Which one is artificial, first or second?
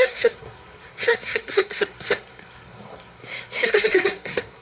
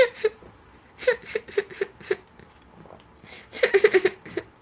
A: first